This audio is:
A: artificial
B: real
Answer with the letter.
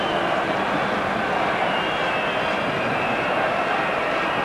B